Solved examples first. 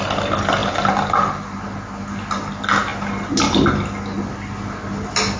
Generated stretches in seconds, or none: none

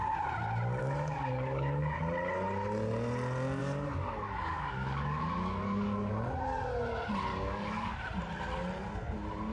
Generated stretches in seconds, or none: 0.8-2.0; 3.6-6.1; 7.3-8.0

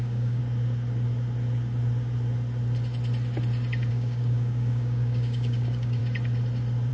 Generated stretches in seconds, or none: 0.0-0.4; 3.9-6.0

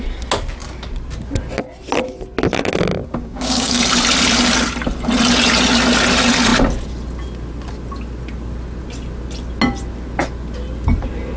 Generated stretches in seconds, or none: 3.2-3.8

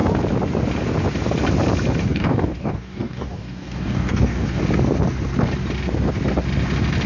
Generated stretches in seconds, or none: 2.0-4.6

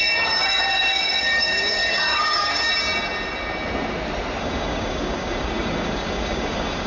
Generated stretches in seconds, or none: 0.0-2.7; 4.4-6.9